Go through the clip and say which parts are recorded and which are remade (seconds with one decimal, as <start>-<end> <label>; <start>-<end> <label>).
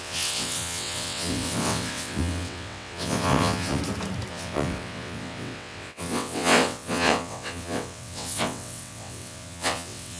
0.0-3.8 remade; 3.8-4.3 recorded; 4.3-10.2 remade